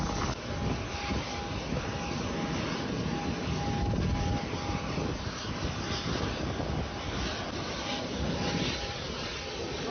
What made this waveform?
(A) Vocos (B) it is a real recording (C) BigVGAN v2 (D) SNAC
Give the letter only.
B